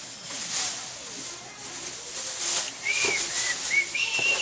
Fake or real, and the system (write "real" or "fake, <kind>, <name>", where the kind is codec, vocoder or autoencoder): real